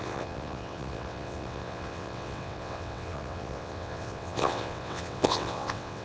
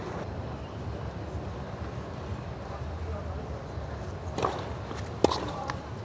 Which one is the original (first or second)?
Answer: second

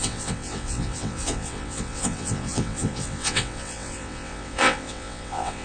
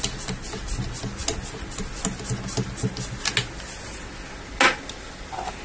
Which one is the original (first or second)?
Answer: second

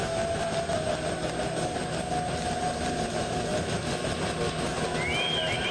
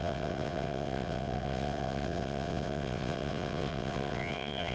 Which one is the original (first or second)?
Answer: first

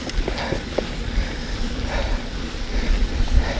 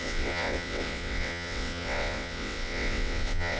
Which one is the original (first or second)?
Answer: first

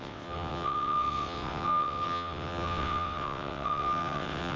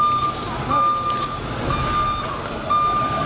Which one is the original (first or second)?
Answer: second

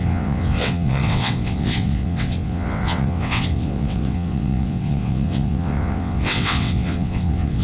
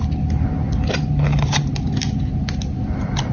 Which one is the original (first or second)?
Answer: second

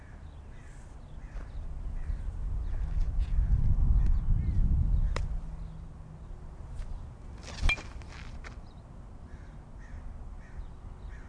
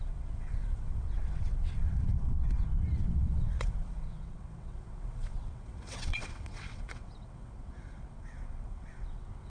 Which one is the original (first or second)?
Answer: first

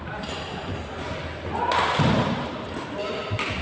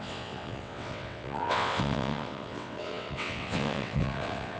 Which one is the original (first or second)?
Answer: first